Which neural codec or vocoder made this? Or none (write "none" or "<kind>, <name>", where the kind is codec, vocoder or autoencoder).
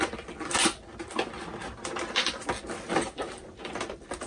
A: none